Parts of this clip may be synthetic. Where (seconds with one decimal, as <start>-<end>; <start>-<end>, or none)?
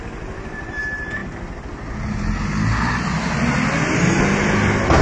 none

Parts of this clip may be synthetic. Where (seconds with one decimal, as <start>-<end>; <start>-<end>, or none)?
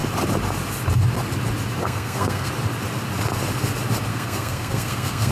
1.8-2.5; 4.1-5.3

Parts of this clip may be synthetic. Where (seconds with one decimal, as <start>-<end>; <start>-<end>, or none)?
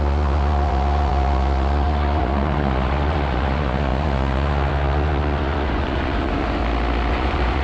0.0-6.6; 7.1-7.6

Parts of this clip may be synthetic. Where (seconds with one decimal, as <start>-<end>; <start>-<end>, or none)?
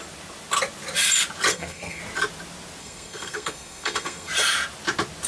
1.5-2.0; 2.8-4.3